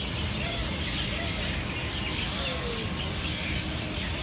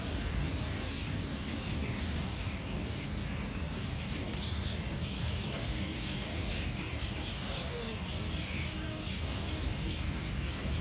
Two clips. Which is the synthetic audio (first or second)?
second